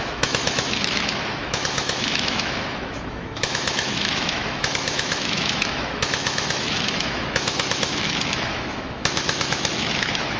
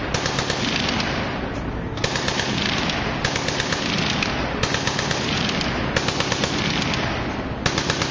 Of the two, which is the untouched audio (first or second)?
second